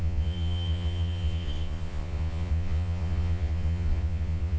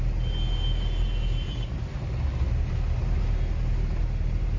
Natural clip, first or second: second